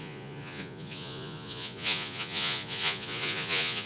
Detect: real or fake fake